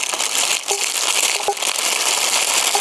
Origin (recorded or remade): recorded